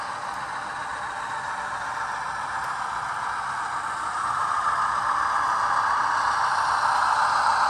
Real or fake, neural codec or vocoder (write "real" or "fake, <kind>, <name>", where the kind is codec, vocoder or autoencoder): real